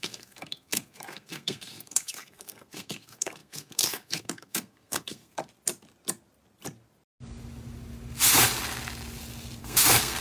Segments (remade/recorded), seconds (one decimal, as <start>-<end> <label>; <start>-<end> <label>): 0.0-5.4 remade; 5.4-9.6 recorded; 9.6-10.2 remade